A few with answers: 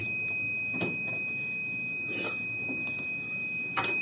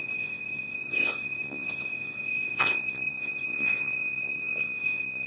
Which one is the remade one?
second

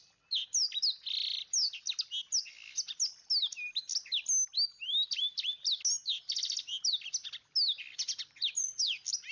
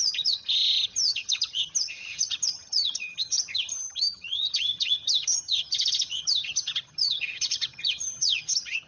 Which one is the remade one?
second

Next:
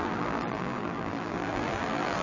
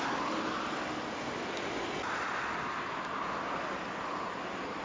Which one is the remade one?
first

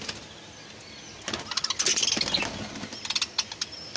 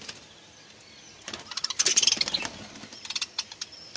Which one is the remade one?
second